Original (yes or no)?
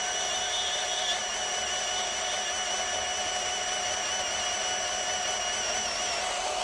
yes